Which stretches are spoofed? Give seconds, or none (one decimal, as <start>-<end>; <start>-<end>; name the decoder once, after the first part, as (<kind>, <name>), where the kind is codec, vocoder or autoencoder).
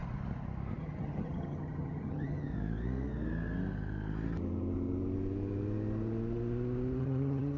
0.8-2.5 (vocoder, HiFi-GAN); 7.0-7.6